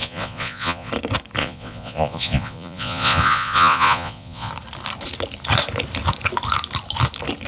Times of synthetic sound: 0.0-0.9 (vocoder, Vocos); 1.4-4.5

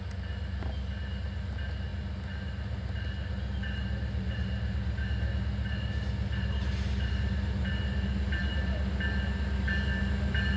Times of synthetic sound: none

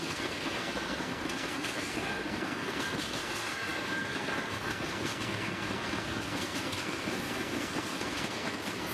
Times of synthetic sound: 0.0-8.9 (codec, SNAC)

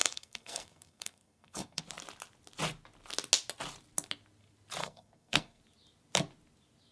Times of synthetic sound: 0.0-1.8 (codec, SNAC); 4.8-5.6

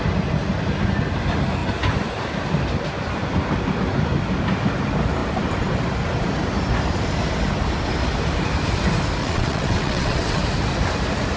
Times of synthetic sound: 9.2-10.4 (vocoder, WaveNeXt)